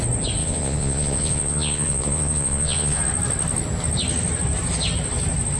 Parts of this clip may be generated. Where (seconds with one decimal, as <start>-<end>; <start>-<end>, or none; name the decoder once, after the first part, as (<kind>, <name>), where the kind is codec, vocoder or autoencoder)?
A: 0.4-3.0 (vocoder, Vocos)